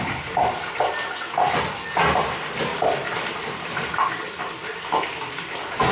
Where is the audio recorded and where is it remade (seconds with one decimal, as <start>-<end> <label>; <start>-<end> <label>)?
0.0-2.7 recorded; 2.7-4.1 remade; 4.1-4.6 recorded; 4.6-5.9 remade